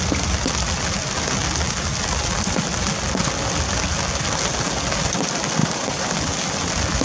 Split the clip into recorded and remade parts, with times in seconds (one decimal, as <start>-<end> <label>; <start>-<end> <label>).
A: 0.0-5.6 recorded; 5.6-6.1 remade; 6.1-7.0 recorded